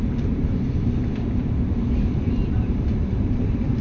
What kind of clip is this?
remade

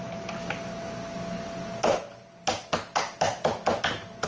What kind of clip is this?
recorded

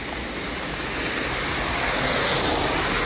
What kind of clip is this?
recorded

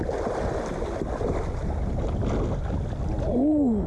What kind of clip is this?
recorded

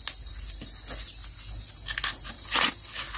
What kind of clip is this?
recorded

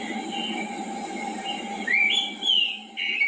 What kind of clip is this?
recorded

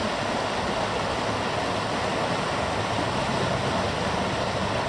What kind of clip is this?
recorded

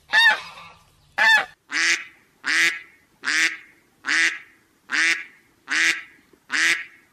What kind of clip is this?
recorded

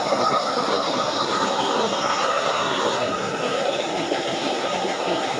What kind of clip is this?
remade